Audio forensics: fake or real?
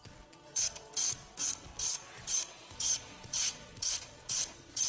fake